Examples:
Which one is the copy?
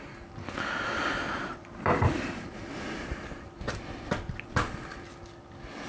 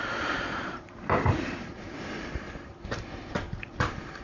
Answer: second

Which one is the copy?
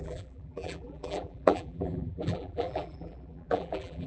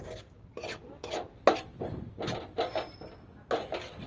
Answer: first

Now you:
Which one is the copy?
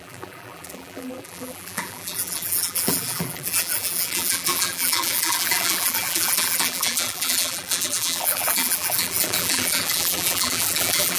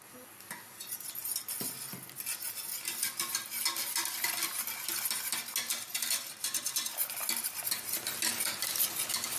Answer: first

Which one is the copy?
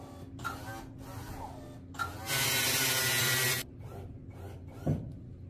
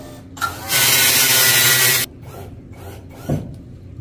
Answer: second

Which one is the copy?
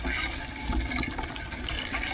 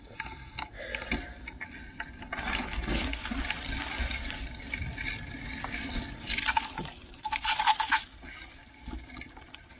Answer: second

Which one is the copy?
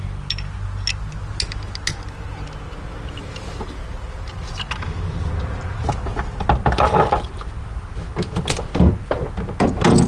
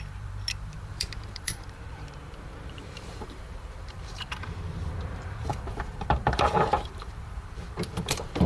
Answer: second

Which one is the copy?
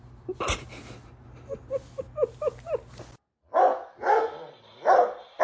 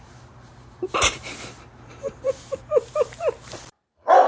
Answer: second